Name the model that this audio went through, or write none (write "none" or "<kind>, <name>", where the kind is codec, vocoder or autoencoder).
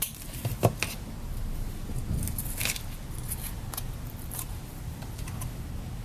none